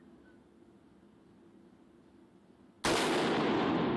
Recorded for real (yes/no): yes